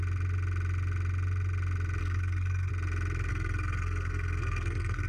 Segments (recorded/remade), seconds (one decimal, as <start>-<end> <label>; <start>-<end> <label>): 0.0-2.0 recorded; 2.0-2.7 remade; 2.7-3.3 recorded; 3.3-5.1 remade

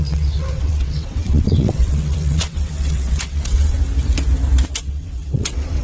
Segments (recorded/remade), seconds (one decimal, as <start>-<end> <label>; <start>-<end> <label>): 0.0-3.8 remade; 3.8-4.8 recorded; 4.8-5.8 remade

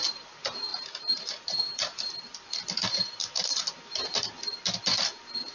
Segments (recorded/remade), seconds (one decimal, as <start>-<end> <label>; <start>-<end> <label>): 0.0-0.7 recorded; 0.7-2.6 remade; 2.6-5.5 recorded

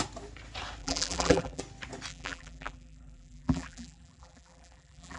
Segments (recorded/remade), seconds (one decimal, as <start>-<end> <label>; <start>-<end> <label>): 0.0-0.8 recorded; 0.8-1.6 remade; 1.6-2.1 recorded; 2.1-5.2 remade

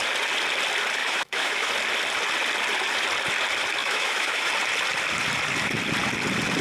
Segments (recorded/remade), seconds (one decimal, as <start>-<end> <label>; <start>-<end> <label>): 0.0-1.0 recorded; 1.0-1.7 remade; 1.7-3.8 recorded; 3.8-4.5 remade; 4.5-6.6 recorded